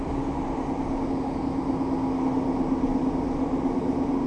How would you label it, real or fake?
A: real